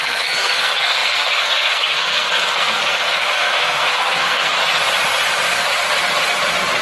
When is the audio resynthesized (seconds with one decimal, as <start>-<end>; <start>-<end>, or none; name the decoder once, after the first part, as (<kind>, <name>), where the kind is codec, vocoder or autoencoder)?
0.0-4.6 (codec, SNAC)

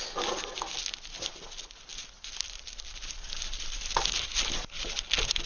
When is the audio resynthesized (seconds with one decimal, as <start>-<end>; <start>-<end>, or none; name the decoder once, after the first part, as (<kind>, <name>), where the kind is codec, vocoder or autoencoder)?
none

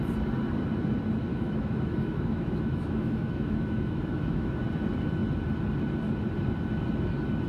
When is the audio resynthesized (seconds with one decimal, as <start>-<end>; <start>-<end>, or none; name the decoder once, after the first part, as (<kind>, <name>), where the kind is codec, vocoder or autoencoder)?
1.3-4.5 (autoencoder, DAC-VAE)

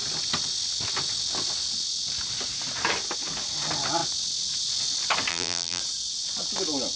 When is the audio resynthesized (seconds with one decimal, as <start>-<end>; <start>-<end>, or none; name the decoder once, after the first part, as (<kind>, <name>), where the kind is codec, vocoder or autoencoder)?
5.3-5.8 (vocoder, BigVGAN v2)

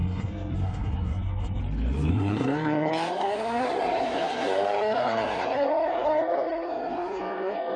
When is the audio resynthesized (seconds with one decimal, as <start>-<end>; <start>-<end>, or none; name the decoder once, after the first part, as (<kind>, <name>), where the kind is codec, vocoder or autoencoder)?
0.0-1.6 (codec, SNAC); 2.1-7.8

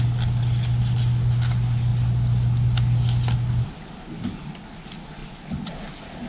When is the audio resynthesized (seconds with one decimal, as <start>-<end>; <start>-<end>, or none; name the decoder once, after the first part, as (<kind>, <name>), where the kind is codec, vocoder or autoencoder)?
none